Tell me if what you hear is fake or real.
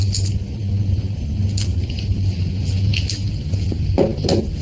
real